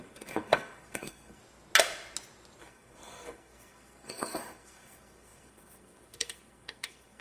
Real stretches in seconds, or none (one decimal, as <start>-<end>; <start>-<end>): 1.4-2.6